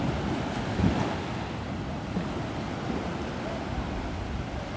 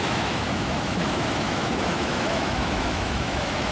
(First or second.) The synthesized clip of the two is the second